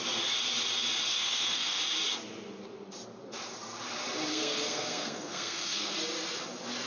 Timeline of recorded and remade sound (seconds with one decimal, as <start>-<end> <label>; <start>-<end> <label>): 0.0-1.1 recorded; 1.1-1.8 remade; 1.8-4.3 recorded; 4.3-5.9 remade; 5.9-6.9 recorded